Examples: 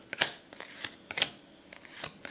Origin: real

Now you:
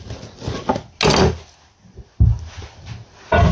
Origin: real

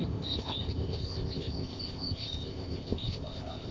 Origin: fake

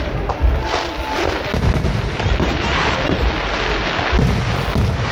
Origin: real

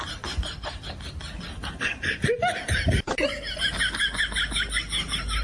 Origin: real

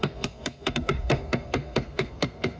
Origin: fake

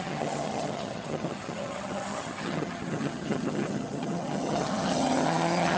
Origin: fake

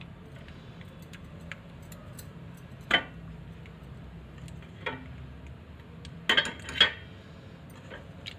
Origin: real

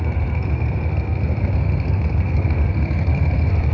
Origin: fake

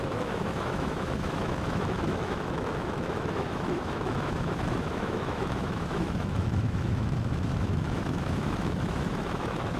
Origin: fake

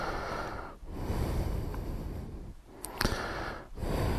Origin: real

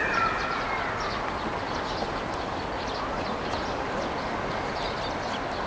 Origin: real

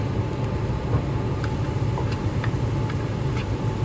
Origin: real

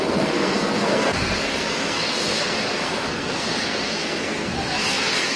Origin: fake